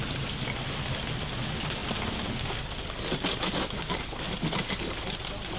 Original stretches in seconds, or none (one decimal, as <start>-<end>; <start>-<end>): 0.0-5.6

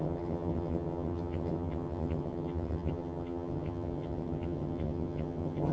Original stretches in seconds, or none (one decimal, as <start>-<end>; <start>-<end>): none

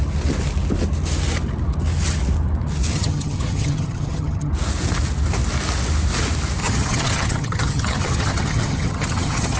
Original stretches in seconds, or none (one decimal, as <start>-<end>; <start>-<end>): 0.0-2.9; 4.5-6.6

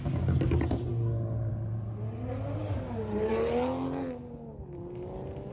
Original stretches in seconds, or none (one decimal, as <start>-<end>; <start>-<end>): 0.0-5.5

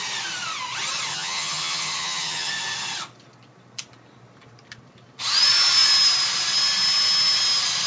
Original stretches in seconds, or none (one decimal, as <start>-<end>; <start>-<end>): 0.0-1.1; 2.5-7.9